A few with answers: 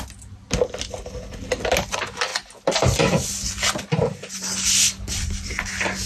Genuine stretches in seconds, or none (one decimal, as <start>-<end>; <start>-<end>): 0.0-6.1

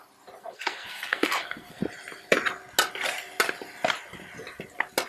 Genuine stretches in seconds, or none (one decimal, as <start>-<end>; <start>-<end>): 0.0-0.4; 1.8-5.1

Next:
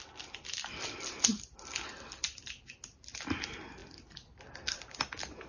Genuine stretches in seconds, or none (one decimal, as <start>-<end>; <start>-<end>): 0.0-5.5